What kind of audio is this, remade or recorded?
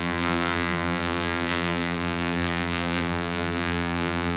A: remade